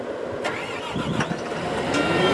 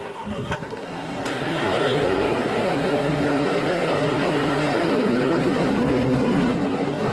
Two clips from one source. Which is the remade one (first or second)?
second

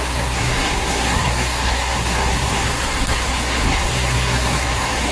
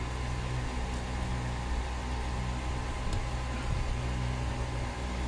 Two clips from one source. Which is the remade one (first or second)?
first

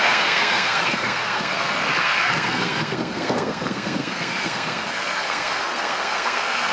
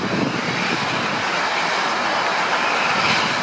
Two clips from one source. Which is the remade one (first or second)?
first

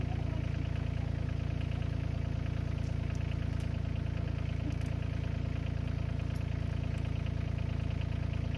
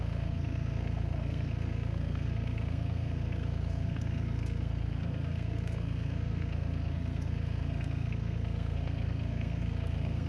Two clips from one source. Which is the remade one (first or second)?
second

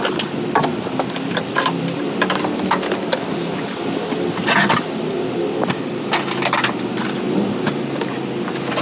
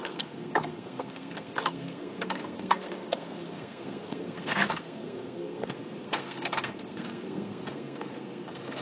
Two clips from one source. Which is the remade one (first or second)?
second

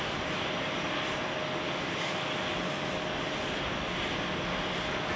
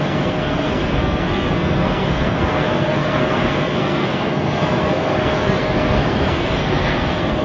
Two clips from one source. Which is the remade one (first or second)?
second